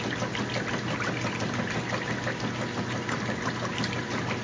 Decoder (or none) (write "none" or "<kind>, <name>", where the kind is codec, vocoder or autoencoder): none